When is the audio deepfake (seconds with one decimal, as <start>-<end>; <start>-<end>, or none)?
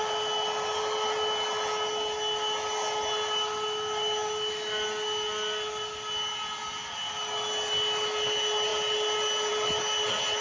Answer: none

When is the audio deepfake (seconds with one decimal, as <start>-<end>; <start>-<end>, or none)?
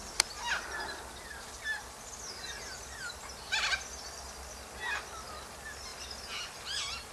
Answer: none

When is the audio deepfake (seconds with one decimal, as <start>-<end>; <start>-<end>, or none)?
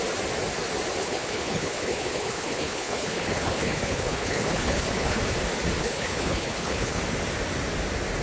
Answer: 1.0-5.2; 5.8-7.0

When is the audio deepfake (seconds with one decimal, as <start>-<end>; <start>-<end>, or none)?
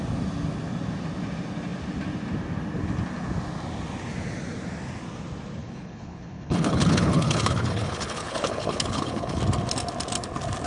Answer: 5.6-9.4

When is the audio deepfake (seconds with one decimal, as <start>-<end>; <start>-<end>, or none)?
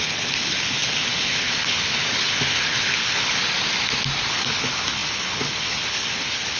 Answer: 0.0-3.4; 4.3-6.6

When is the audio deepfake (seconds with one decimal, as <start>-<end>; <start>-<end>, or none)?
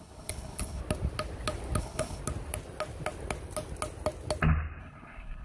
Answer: 0.0-0.8; 1.8-2.2; 4.8-5.4